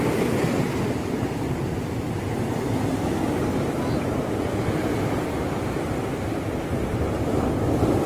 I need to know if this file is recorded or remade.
remade